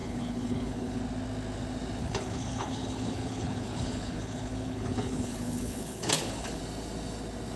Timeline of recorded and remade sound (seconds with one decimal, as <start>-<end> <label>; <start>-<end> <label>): 0.0-1.0 remade; 1.0-2.0 recorded; 2.0-6.6 remade; 6.6-7.6 recorded